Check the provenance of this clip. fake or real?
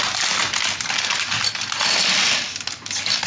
real